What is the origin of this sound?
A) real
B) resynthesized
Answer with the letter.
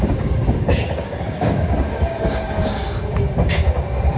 B